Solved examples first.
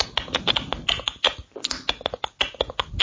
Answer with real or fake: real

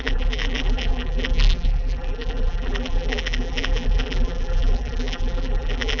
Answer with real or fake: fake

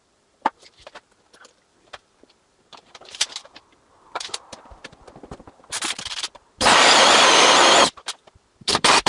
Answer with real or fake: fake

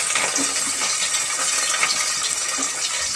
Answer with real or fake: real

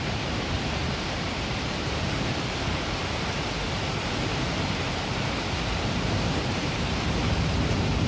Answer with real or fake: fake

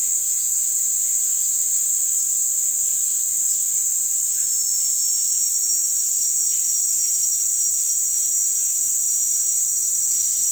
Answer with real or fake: real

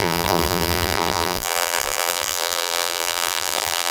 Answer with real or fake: fake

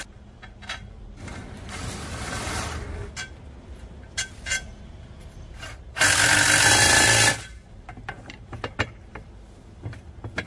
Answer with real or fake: real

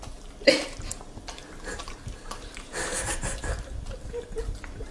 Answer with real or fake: real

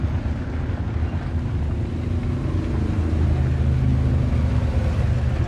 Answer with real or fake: real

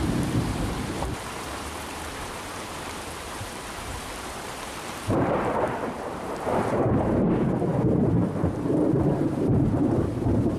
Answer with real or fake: fake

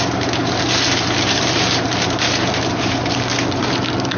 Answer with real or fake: fake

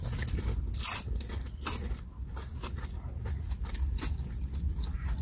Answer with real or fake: real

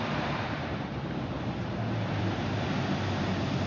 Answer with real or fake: fake